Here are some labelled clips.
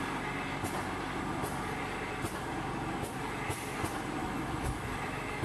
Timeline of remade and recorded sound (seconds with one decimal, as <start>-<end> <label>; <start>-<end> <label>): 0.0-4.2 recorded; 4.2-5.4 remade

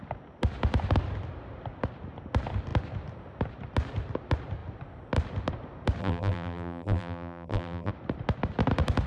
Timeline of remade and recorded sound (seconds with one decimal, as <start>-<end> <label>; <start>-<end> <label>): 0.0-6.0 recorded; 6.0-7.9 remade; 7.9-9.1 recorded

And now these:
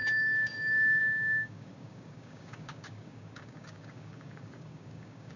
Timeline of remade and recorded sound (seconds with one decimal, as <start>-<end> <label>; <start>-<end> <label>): 0.0-5.4 remade